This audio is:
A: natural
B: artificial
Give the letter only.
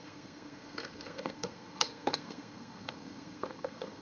B